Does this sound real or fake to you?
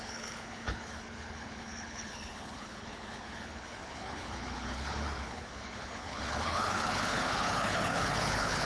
fake